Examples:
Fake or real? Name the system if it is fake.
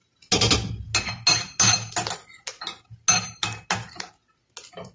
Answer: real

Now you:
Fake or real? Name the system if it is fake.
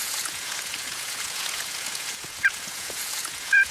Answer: fake, vocoder, Vocos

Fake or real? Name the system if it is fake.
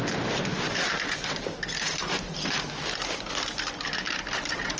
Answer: real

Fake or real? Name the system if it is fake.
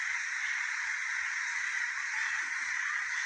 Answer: fake, vocoder, Vocos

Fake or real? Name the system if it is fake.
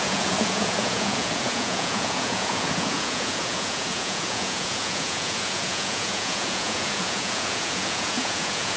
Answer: fake, vocoder, Vocos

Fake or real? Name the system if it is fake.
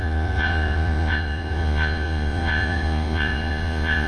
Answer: fake, vocoder, Vocos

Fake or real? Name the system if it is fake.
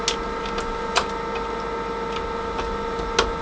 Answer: real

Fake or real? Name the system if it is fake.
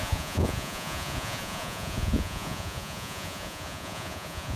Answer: fake, vocoder, Vocos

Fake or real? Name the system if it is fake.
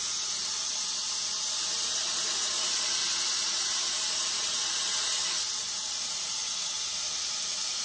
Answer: fake, vocoder, Vocos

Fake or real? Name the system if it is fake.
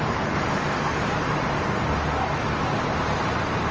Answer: real